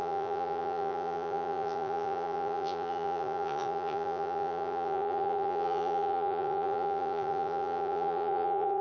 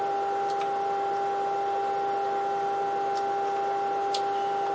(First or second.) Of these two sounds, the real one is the second